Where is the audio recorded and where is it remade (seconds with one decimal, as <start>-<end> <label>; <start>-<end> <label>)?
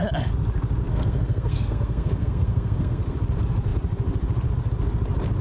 0.0-0.9 recorded; 0.9-3.2 remade; 3.2-5.4 recorded